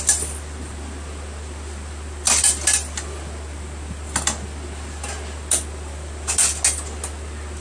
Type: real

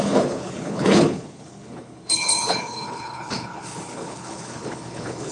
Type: fake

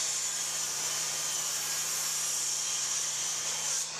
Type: fake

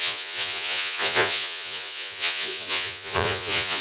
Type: fake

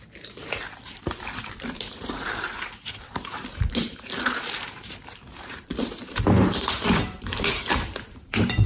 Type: fake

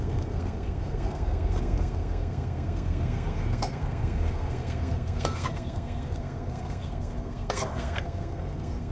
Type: fake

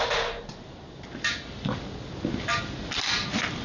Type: real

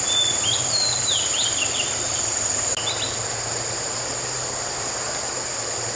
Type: real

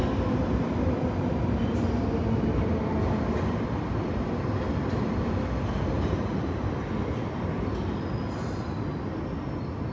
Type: real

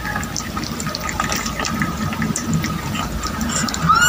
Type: real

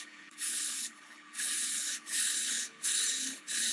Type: fake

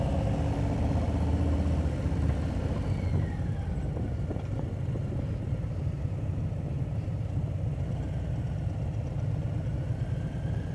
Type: real